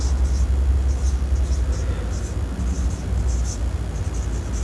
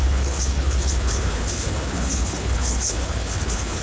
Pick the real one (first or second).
first